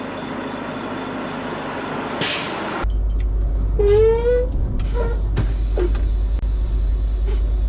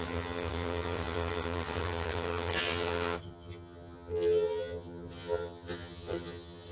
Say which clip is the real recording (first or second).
first